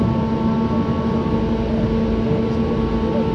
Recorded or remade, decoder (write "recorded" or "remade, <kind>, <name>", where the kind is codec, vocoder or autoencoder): recorded